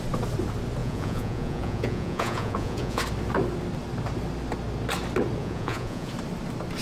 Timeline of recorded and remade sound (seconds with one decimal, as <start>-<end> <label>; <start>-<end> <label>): 0.0-0.8 recorded; 0.8-3.0 remade; 3.0-5.4 recorded; 5.4-6.1 remade; 6.1-6.8 recorded